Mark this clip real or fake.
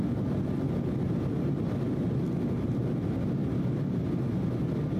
real